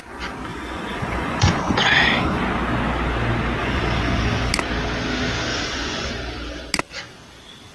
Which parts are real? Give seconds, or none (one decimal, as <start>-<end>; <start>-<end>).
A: 0.0-0.5; 2.4-3.6; 4.5-5.5; 6.1-7.7